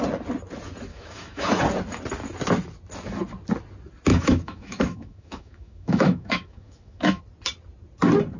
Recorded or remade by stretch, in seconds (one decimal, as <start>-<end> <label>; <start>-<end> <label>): 0.0-0.9 recorded; 0.9-1.6 remade; 1.6-4.1 recorded; 4.1-7.2 remade; 7.2-8.4 recorded